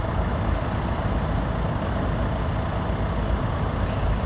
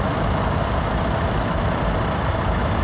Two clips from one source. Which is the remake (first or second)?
second